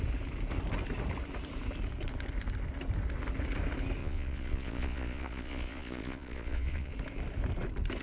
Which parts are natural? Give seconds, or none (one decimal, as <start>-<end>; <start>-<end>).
0.0-4.0; 6.9-8.0